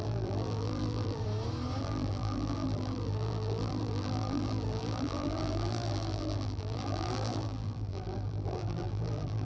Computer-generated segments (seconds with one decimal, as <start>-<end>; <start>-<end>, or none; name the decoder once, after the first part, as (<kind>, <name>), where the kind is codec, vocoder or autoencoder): 0.0-1.2 (vocoder, BigVGAN v2); 1.8-9.4